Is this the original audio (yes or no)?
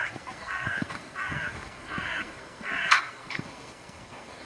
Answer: no